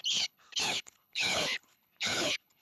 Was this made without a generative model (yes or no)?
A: no